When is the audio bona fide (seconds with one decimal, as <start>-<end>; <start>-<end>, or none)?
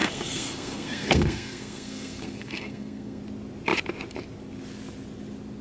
3.2-5.6